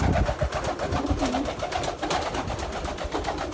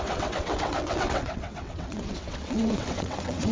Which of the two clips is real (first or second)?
first